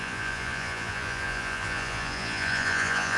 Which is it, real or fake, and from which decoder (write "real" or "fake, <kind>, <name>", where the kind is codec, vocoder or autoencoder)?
fake, vocoder, Vocos